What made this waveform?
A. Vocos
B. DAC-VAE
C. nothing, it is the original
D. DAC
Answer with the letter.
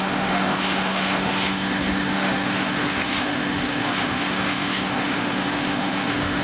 B